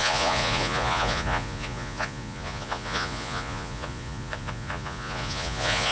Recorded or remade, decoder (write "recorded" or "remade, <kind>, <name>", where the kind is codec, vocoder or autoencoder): remade, vocoder, Vocos